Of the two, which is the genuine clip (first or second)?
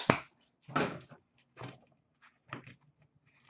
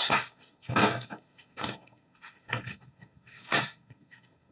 first